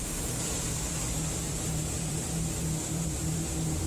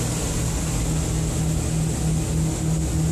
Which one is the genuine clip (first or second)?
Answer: second